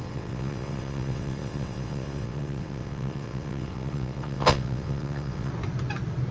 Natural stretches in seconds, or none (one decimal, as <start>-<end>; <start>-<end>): 5.5-6.3